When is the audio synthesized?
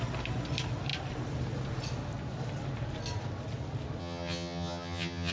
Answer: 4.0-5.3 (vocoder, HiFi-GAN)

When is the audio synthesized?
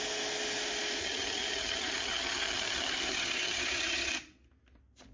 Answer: 1.0-4.1 (vocoder, HiFi-GAN)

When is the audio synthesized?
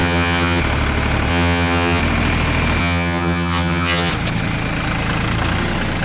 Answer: 0.0-0.6 (vocoder, HiFi-GAN); 1.3-2.0; 2.8-4.1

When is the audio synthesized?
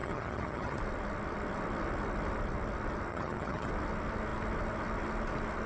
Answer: 0.0-0.8 (vocoder, HiFi-GAN); 3.1-3.7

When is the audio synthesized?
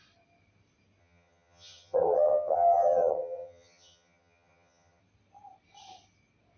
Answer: 1.0-5.0 (vocoder, HiFi-GAN)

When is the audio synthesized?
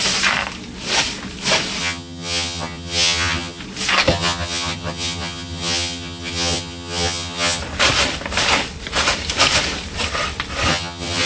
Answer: 1.8-3.6 (vocoder, HiFi-GAN); 4.1-7.6; 10.7-11.3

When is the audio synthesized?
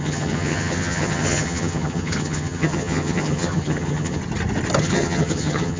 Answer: 0.0-4.2 (vocoder, HiFi-GAN); 4.8-5.8